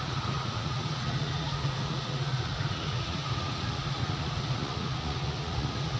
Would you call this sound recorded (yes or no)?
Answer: no